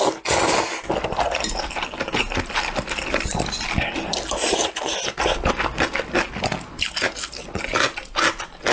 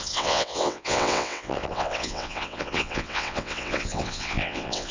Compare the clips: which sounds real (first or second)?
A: first